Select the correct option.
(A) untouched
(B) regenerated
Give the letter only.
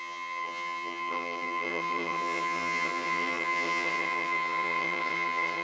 B